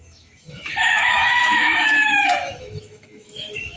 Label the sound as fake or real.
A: fake